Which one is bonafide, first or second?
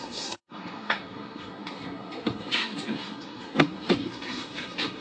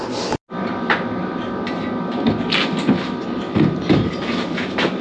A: second